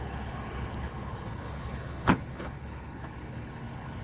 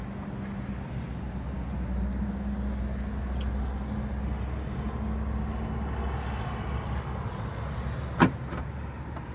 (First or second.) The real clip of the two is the second